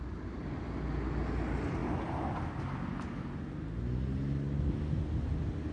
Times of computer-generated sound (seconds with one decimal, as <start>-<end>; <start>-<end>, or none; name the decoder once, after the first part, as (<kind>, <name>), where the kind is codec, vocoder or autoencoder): none